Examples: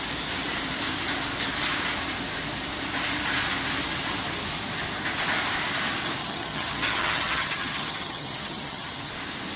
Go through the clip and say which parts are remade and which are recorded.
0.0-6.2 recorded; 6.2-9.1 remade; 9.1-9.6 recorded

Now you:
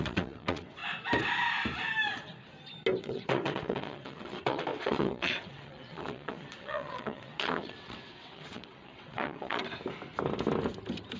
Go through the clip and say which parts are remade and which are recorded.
0.0-0.8 remade; 0.8-3.0 recorded; 3.0-9.6 remade; 9.6-11.2 recorded

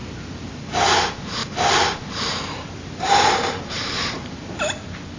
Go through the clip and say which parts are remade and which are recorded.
0.0-1.4 recorded; 1.4-4.5 remade; 4.5-5.2 recorded